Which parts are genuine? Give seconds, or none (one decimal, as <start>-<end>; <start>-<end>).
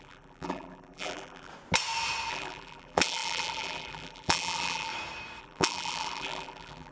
1.5-2.3; 4.9-5.4